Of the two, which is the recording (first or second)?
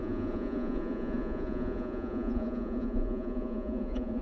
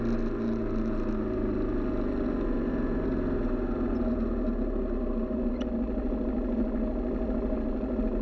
second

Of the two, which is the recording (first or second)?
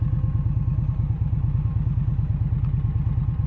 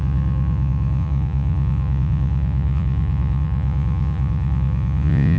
first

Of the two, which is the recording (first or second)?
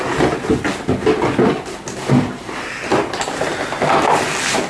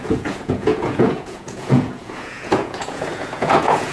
first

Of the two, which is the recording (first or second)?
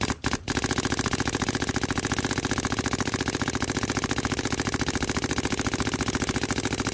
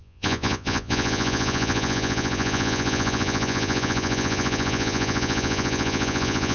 first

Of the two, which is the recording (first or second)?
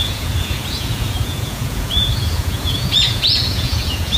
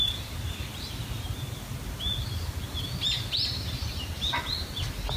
second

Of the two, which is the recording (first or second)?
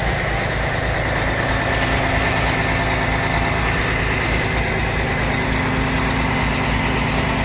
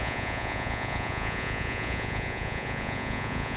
first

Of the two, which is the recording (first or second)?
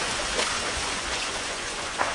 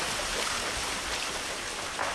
second